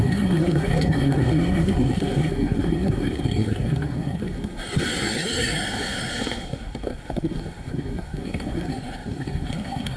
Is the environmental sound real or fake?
fake